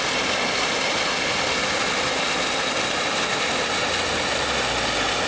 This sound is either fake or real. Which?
real